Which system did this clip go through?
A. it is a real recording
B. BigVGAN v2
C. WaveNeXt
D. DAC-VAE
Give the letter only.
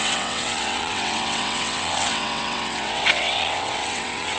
C